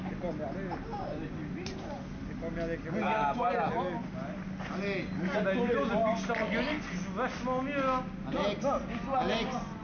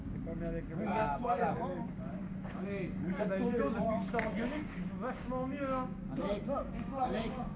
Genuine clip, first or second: first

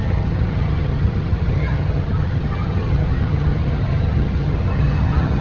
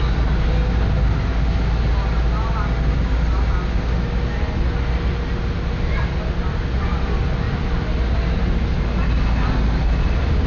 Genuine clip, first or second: second